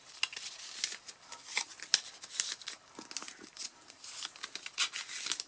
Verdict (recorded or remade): recorded